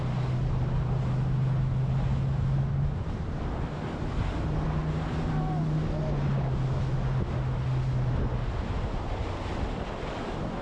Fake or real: real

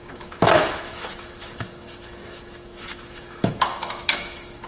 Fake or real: fake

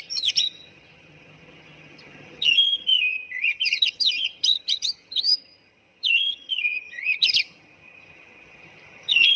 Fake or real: fake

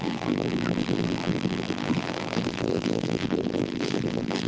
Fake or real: fake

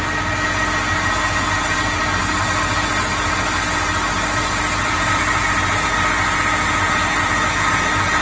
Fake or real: real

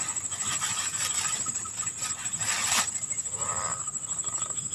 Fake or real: real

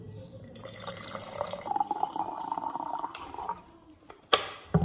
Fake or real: fake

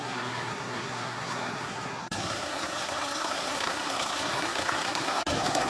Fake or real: fake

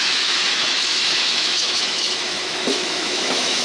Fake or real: fake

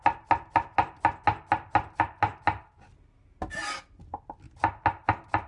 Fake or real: real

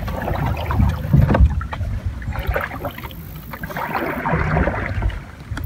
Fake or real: real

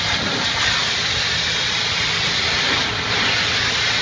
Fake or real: real